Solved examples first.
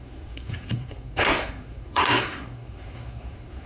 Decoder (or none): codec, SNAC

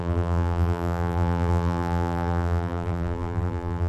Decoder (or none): vocoder, BigVGAN v2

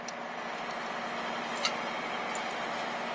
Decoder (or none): none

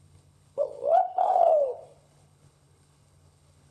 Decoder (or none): codec, HILCodec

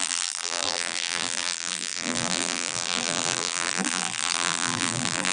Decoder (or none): vocoder, BigVGAN v2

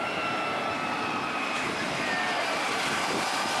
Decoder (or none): none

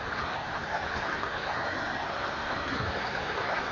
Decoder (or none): codec, SNAC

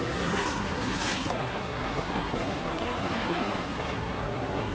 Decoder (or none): codec, SNAC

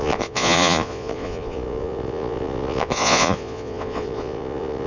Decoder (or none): vocoder, Vocos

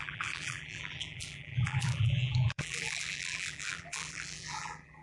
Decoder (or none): vocoder, BigVGAN v2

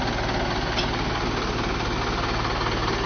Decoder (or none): none